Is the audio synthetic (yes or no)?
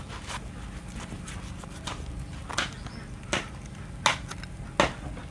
no